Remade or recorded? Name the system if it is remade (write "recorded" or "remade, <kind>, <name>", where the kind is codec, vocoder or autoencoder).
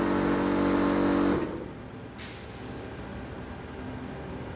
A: recorded